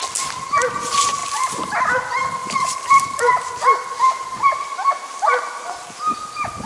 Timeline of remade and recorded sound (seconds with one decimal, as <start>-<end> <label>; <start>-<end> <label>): 0.0-1.2 recorded; 1.2-1.7 remade; 1.7-2.4 recorded; 2.4-3.5 remade; 3.5-6.7 recorded